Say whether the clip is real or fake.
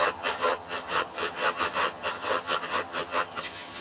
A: fake